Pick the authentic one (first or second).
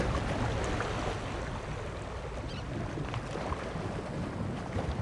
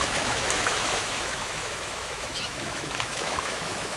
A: first